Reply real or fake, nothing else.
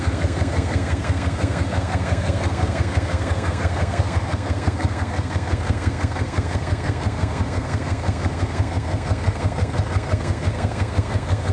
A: fake